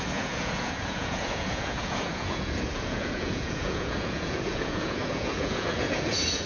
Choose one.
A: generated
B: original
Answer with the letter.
A